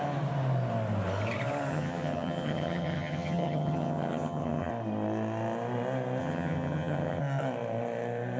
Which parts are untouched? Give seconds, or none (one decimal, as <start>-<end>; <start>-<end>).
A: 0.0-1.7; 4.7-6.2; 7.2-8.4